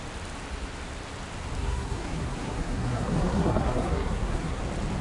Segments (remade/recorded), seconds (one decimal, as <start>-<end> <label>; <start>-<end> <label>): 0.0-1.6 recorded; 1.6-4.6 remade; 4.6-5.0 recorded